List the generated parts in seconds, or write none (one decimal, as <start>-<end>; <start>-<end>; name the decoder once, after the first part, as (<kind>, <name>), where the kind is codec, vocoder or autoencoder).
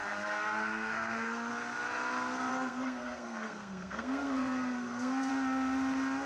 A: 0.0-1.5 (codec, SNAC); 2.5-5.3